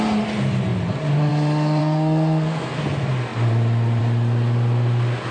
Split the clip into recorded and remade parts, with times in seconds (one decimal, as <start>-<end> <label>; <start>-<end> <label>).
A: 0.0-1.8 recorded; 1.8-2.8 remade; 2.8-5.3 recorded